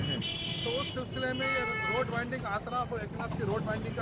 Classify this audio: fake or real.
real